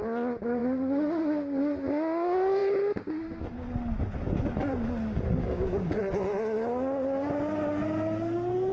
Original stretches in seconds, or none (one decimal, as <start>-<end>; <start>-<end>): 0.0-5.4; 6.0-8.7

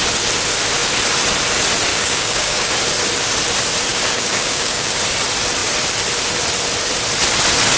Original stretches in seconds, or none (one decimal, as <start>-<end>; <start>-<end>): 0.0-1.9; 2.7-3.9; 4.9-7.8

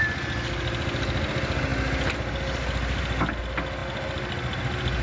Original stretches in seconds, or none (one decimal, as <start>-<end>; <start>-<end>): 0.0-5.0

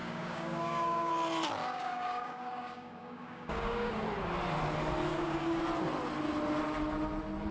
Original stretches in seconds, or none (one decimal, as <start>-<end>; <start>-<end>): 1.1-1.6; 3.9-5.1; 5.6-7.5

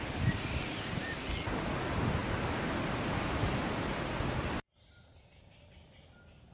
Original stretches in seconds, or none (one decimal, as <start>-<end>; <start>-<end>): 0.0-6.5

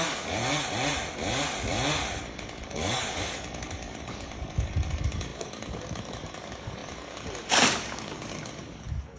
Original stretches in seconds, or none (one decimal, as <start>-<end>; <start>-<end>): 0.4-2.2